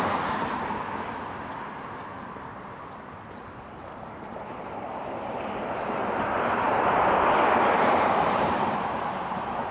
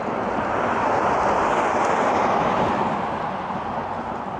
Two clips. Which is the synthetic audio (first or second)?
first